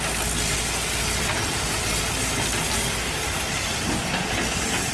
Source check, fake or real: real